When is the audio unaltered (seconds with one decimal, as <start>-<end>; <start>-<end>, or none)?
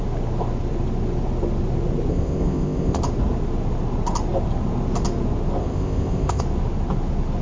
0.0-2.1; 3.0-5.6; 6.4-7.4